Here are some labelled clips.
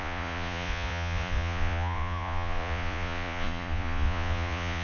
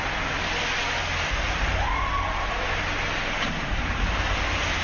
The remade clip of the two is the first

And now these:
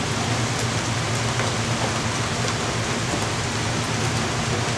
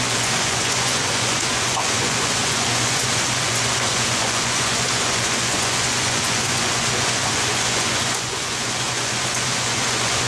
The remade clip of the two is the second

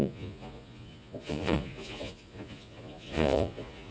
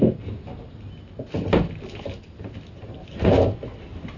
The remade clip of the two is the first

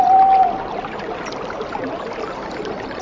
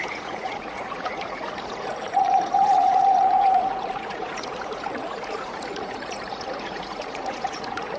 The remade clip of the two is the second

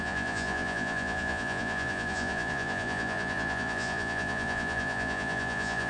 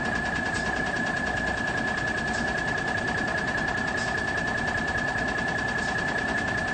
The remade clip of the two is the first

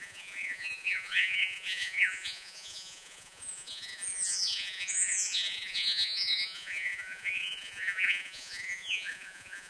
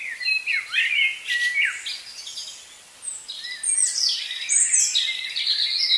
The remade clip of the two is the first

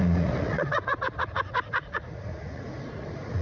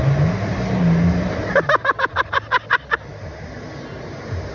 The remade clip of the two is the first